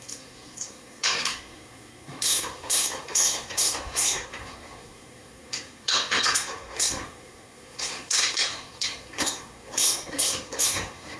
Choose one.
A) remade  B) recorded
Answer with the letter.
A